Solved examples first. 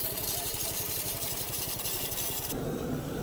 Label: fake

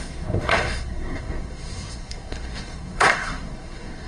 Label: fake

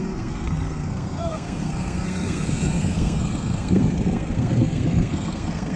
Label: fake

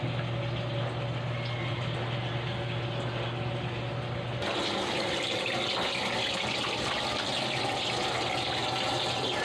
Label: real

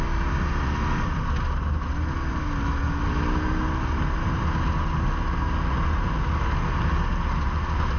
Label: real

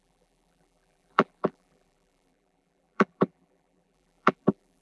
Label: fake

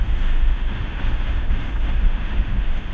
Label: fake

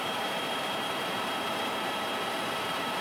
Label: fake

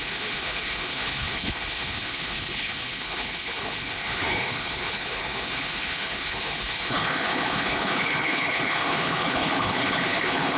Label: fake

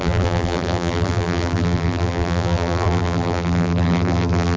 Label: fake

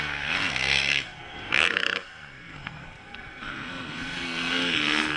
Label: fake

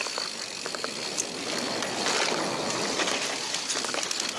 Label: real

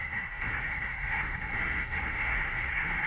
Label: fake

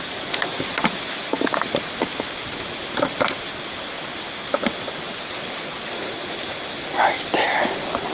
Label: real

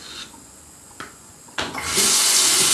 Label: fake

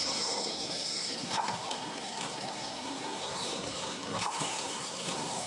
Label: fake